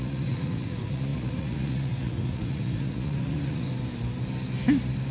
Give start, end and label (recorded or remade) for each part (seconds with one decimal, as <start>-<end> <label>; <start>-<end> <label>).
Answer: 0.0-3.7 remade; 3.7-5.1 recorded